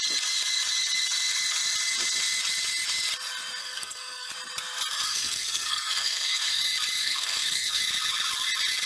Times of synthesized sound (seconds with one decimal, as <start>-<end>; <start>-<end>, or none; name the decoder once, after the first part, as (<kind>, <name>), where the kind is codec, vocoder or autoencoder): 3.6-4.3 (codec, SNAC); 5.1-6.6; 7.0-7.8

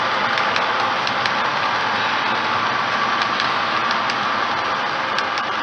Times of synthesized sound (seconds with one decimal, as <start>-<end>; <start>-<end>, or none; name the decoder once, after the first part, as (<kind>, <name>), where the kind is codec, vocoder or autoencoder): none

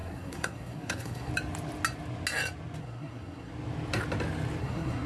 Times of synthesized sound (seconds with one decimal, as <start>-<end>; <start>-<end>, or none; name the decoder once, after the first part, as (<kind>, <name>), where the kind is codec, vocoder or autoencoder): 0.0-1.3 (codec, SNAC); 2.8-3.5; 4.6-5.1

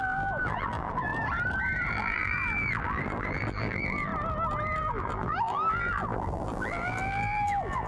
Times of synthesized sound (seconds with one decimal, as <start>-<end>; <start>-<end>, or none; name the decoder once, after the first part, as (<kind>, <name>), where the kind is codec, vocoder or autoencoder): 0.0-1.1 (vocoder, BigVGAN v2); 1.9-4.1; 4.8-7.9

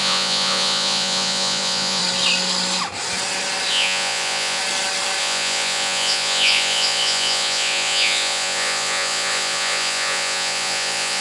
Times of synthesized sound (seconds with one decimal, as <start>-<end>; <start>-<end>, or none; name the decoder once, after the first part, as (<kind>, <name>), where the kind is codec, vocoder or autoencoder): 0.0-2.0 (vocoder, Vocos); 3.7-4.6; 5.2-11.2

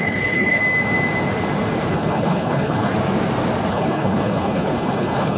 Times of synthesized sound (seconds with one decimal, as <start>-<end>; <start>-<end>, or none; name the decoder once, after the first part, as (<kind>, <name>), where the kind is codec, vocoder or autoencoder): 0.0-0.6 (codec, HILCodec); 1.9-2.9; 3.7-5.4